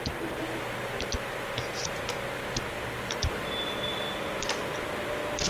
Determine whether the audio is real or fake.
real